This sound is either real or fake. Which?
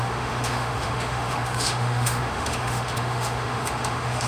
fake